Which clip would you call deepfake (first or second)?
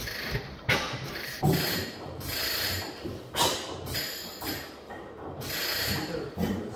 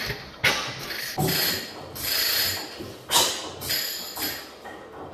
first